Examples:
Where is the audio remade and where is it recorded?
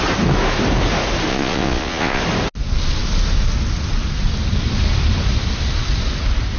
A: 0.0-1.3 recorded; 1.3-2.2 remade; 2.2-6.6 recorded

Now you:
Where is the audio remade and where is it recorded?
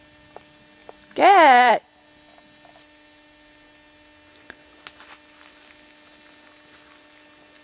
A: 0.0-7.6 recorded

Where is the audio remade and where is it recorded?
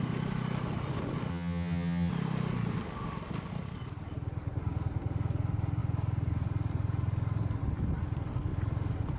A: 0.0-1.3 recorded; 1.3-2.1 remade; 2.1-9.2 recorded